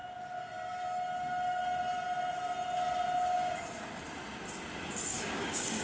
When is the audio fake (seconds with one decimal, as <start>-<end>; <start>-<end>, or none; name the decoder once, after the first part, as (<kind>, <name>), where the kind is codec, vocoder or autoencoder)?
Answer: 5.1-5.8 (codec, DAC)